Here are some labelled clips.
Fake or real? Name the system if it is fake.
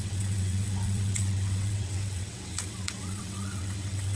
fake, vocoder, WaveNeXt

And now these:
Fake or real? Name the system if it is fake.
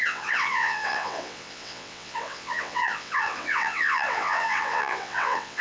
fake, vocoder, WaveNeXt